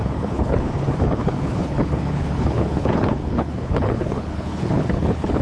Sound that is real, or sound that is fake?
fake